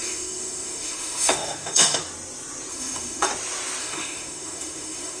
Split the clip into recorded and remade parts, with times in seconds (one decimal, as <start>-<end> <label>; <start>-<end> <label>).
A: 0.0-2.0 remade; 2.0-2.7 recorded; 2.7-3.3 remade; 3.3-3.8 recorded; 3.8-5.2 remade